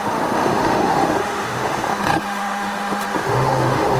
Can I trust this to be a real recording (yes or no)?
no